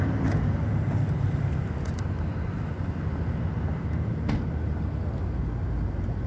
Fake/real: real